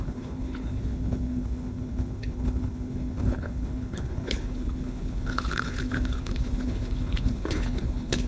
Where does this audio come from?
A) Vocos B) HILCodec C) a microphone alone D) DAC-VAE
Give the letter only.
B